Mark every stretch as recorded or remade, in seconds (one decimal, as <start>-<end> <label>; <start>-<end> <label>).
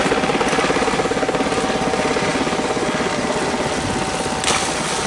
0.0-5.1 recorded